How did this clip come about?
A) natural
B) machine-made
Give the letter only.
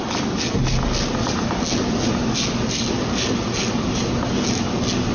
A